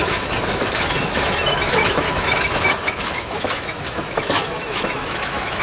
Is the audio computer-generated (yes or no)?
yes